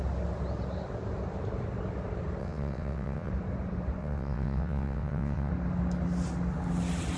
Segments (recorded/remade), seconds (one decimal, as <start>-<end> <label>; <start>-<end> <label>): 0.0-2.4 recorded; 2.4-3.3 remade; 3.3-4.0 recorded; 4.0-5.5 remade; 5.5-7.2 recorded